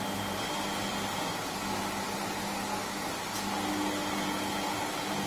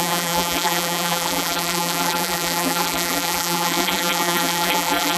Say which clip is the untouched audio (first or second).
first